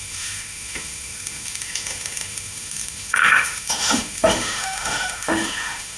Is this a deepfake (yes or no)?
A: yes